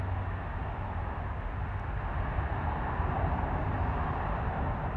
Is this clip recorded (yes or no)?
yes